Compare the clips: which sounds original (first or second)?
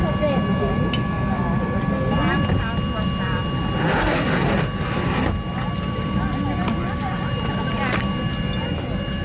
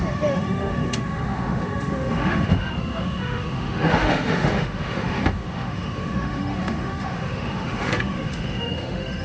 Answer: first